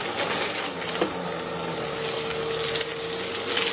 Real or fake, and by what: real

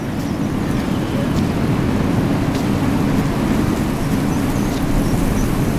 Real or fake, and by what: real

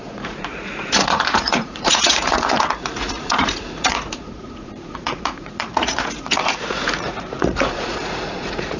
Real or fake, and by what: fake, vocoder, Vocos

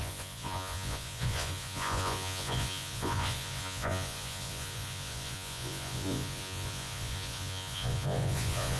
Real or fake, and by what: fake, vocoder, Vocos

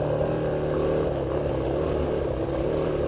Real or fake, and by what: real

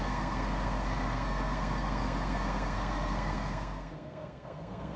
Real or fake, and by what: fake, codec, SNAC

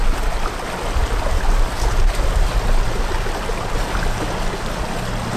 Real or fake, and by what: real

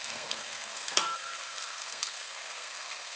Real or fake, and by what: fake, codec, SNAC